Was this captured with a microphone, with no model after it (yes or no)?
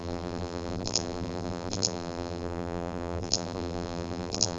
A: no